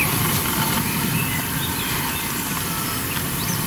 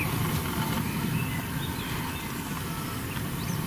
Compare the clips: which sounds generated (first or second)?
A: first